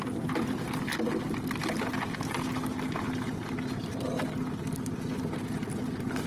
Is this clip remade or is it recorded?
recorded